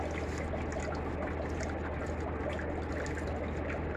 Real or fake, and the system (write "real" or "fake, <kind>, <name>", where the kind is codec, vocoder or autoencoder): real